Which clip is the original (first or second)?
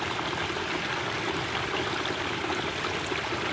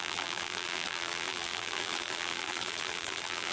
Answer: first